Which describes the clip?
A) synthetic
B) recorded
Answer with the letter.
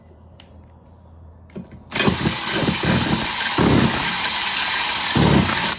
B